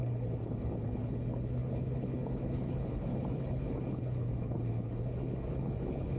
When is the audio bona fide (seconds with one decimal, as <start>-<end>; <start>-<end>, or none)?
none